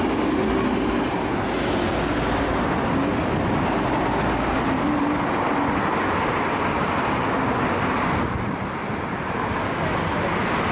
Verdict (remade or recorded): recorded